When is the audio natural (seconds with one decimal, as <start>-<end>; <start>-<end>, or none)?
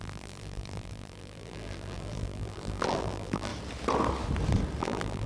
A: 3.5-4.8